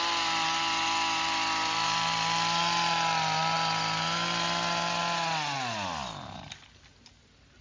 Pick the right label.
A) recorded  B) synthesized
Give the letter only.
A